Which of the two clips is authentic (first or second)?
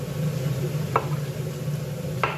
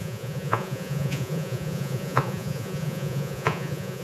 first